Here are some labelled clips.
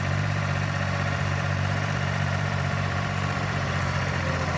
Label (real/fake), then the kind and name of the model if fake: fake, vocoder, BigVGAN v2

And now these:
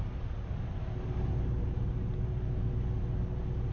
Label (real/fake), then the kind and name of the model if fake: real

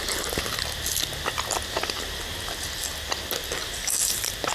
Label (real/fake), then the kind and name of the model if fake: real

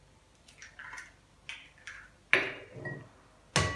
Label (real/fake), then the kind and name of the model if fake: real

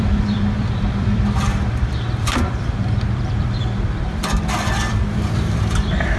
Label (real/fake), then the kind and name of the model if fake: fake, vocoder, BigVGAN v2